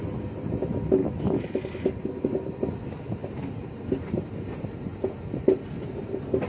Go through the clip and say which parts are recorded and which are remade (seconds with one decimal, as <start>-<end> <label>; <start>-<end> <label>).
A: 0.0-1.0 recorded; 1.0-1.6 remade; 1.6-6.5 recorded